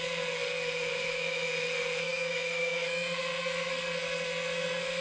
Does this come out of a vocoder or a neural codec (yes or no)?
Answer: yes